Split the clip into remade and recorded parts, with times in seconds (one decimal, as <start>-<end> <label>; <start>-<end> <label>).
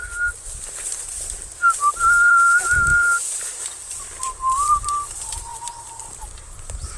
0.0-1.9 recorded; 1.9-7.0 remade